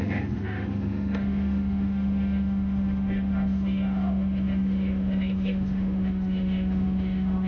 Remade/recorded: remade